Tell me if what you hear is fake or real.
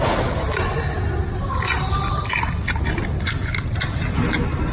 real